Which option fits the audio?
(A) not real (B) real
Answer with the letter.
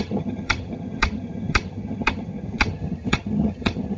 A